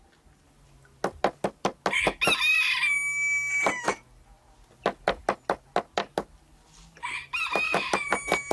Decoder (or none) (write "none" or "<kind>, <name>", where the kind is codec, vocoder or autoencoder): none